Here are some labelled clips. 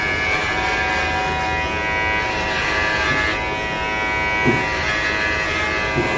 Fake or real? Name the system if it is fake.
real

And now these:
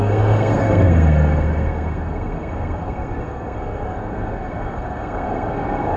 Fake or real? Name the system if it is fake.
fake, codec, SNAC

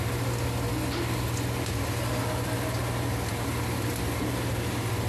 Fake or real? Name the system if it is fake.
real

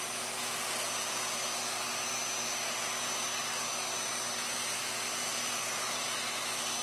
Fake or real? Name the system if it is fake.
real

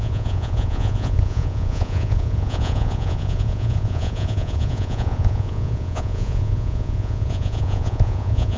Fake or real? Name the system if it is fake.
fake, vocoder, Vocos